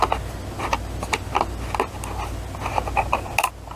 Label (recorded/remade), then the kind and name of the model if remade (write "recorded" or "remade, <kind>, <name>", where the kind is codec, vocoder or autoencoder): recorded